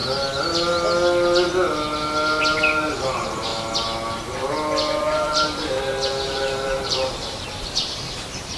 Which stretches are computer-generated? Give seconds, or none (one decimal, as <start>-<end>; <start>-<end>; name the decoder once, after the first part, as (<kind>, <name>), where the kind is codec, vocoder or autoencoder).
2.4-3.5 (vocoder, BigVGAN v2); 5.0-8.6

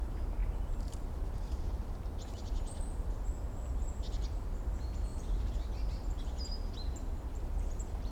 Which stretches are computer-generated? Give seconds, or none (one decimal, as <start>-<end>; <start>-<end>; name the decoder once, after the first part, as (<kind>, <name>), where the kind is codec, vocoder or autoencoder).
0.0-3.3 (vocoder, BigVGAN v2); 4.5-8.1

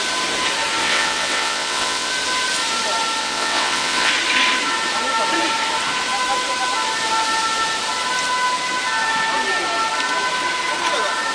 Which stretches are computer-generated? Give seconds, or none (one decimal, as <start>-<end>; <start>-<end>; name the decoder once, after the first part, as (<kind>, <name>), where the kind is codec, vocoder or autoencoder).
0.8-2.1 (vocoder, WaveNeXt); 3.2-4.1